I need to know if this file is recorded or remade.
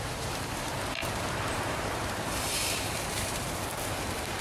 remade